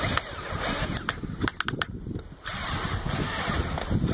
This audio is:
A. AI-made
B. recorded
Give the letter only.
B